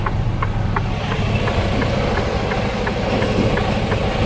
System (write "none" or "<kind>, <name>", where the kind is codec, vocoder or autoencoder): none